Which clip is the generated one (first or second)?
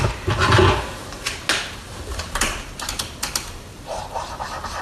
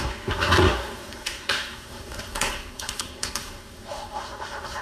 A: second